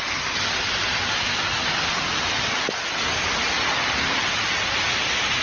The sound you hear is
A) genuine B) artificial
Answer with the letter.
A